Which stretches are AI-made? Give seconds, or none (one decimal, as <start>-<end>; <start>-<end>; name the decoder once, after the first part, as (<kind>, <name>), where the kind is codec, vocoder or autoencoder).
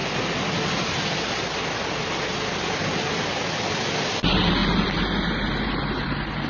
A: none